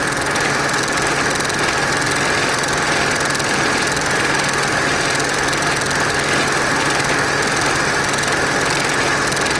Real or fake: real